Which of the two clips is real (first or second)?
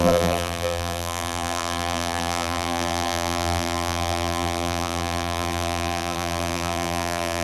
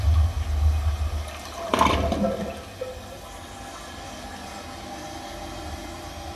second